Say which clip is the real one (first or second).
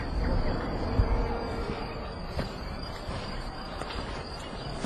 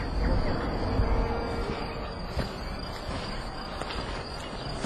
second